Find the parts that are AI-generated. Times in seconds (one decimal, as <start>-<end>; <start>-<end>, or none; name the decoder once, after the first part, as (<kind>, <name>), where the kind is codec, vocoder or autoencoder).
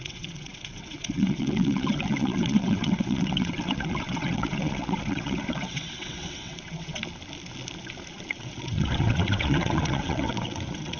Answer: 0.0-7.0 (vocoder, WaveNeXt); 8.3-11.0